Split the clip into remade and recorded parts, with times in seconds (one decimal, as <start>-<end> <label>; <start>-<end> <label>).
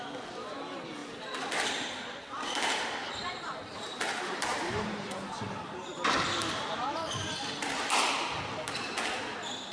0.0-3.2 recorded; 3.2-5.9 remade; 5.9-9.7 recorded